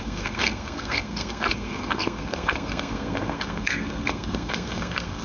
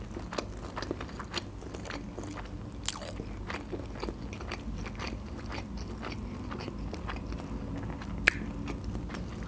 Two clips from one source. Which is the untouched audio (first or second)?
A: second